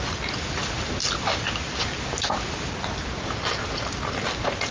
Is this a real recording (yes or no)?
yes